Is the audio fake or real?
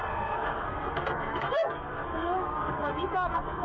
fake